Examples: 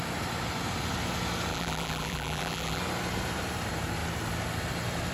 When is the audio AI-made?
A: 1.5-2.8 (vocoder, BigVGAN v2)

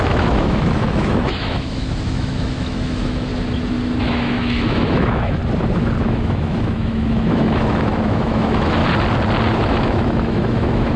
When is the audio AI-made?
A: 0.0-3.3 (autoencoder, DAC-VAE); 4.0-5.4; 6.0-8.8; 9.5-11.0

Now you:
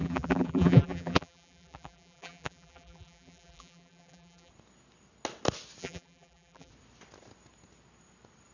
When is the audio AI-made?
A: 0.0-4.5 (vocoder, BigVGAN v2); 5.8-6.7

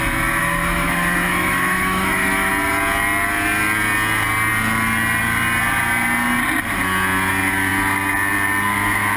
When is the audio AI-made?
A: 0.4-2.5 (autoencoder, DAC-VAE)

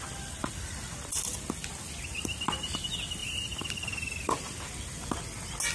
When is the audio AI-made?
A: none

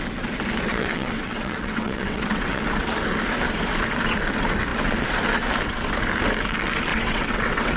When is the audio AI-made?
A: 0.7-2.6 (vocoder, WaveNeXt); 6.9-7.8

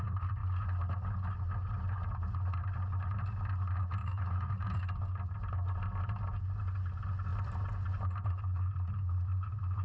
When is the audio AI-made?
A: 4.0-4.5 (autoencoder, DAC-VAE)

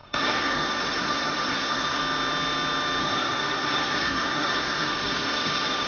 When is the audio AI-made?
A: 0.0-2.0 (codec, SNAC); 3.0-5.9